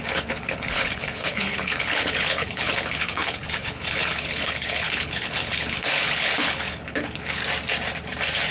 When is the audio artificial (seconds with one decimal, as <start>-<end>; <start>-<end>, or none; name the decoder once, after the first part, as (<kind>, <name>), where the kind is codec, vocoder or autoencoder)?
0.0-7.4 (codec, HILCodec)